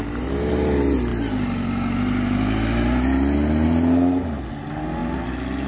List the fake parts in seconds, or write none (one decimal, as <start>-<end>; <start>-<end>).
none